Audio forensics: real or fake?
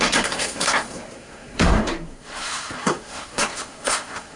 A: fake